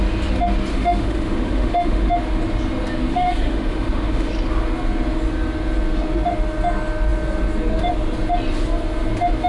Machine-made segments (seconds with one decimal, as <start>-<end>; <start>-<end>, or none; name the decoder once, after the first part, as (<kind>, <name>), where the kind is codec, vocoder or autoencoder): 0.7-2.1 (autoencoder, DAC-VAE); 3.1-4.3